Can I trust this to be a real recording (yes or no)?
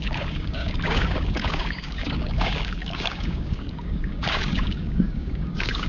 no